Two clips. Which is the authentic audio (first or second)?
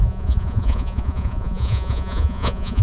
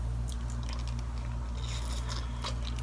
second